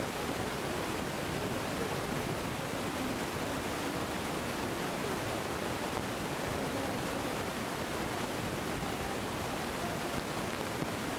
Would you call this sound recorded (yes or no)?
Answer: no